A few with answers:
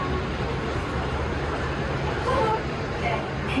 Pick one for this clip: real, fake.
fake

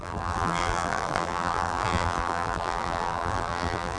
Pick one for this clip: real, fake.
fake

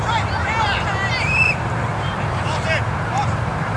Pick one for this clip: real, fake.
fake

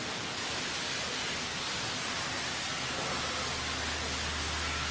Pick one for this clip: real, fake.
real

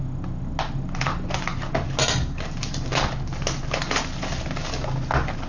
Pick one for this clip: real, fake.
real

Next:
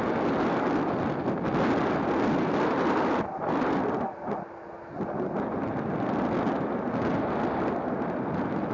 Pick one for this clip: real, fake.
real